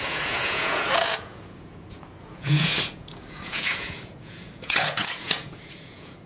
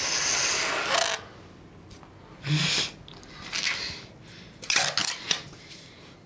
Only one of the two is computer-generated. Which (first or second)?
first